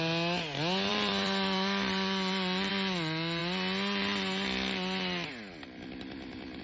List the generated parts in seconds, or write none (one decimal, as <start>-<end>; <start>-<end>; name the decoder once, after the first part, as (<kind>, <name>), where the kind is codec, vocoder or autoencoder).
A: 0.9-2.7 (vocoder, BigVGAN v2)